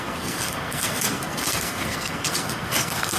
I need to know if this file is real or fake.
fake